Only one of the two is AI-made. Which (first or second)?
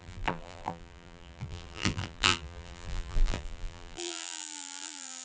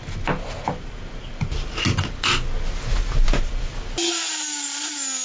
first